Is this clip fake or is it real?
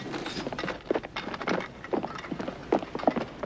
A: real